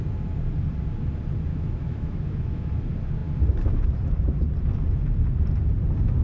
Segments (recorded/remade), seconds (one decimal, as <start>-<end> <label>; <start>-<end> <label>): 0.0-1.5 recorded; 1.5-2.7 remade; 2.7-6.2 recorded